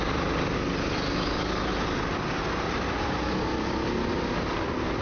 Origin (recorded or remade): recorded